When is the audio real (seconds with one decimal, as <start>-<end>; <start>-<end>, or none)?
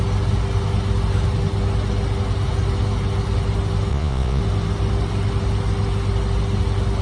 0.0-3.9; 4.4-7.0